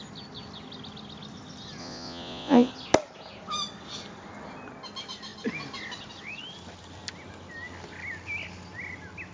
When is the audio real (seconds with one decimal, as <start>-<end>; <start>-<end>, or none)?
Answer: 0.0-1.8; 2.7-9.3